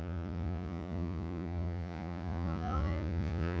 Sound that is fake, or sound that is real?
fake